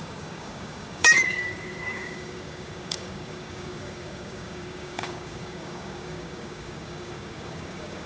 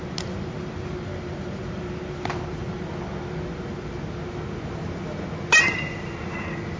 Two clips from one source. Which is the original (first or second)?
second